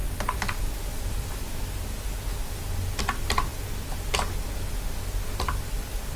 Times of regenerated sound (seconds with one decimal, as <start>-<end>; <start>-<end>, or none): 0.0-1.4